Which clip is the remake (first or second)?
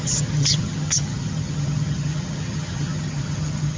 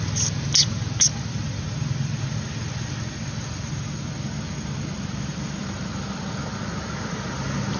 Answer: first